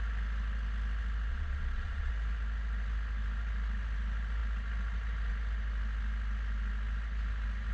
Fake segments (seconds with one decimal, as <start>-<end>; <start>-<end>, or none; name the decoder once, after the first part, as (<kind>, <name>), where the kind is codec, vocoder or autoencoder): 1.3-2.1 (vocoder, Vocos)